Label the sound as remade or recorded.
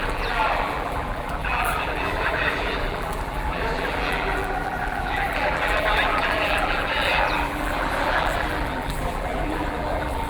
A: remade